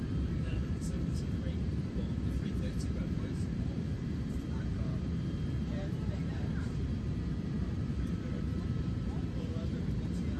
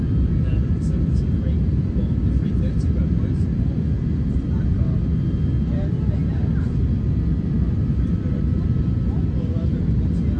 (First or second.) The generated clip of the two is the first